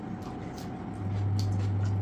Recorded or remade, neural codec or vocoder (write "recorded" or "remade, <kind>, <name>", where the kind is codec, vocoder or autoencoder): recorded